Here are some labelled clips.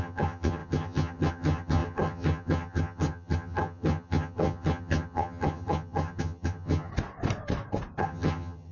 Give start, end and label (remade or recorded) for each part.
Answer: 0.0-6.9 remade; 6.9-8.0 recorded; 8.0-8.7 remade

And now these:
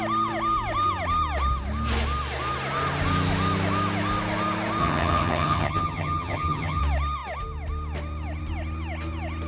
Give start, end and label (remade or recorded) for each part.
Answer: 0.0-4.8 recorded; 4.8-6.8 remade; 6.8-9.5 recorded

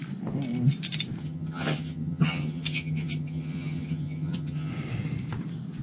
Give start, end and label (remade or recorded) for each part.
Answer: 0.0-1.2 recorded; 1.2-4.7 remade; 4.7-5.8 recorded

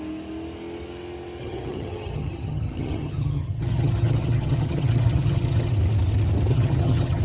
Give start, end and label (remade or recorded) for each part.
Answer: 0.0-1.4 recorded; 1.4-5.7 remade; 5.7-6.5 recorded; 6.5-7.2 remade

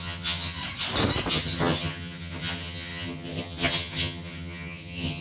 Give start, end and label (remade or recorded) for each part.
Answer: 0.0-0.6 remade; 0.6-1.3 recorded; 1.3-5.2 remade

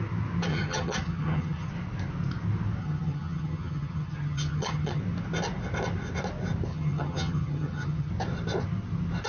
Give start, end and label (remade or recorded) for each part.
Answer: 0.0-0.5 recorded; 0.5-1.7 remade; 1.7-2.8 recorded; 2.8-5.0 remade; 5.0-6.7 recorded; 6.7-8.1 remade; 8.1-9.3 recorded